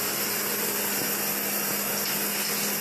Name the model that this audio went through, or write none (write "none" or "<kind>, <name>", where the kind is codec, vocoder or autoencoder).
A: none